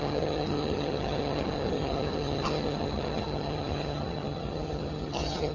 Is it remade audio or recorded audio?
remade